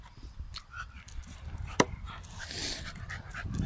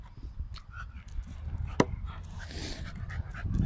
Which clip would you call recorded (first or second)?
second